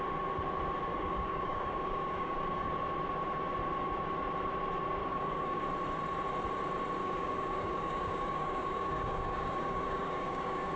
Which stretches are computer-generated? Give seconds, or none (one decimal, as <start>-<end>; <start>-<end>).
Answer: 0.9-2.7; 5.0-5.6; 7.0-10.8